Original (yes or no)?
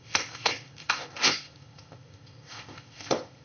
no